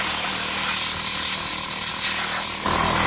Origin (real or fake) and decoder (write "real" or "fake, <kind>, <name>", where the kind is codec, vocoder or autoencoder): real